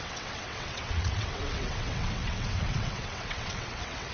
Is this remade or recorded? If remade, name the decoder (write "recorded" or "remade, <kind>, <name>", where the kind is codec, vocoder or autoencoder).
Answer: remade, vocoder, WaveNeXt